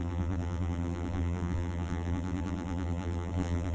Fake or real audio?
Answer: fake